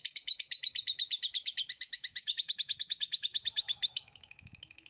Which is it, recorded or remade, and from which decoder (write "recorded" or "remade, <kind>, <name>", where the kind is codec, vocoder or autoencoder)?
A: remade, autoencoder, DAC-VAE